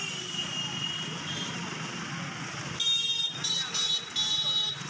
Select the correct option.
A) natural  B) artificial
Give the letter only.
A